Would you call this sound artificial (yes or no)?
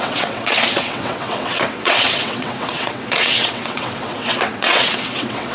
yes